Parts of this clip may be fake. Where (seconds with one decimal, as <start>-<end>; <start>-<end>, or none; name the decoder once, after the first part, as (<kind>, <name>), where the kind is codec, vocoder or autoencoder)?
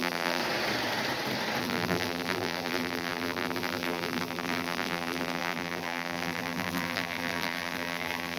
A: 0.0-0.4 (vocoder, BigVGAN v2); 1.6-8.4